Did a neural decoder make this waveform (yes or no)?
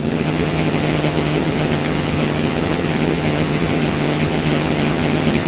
yes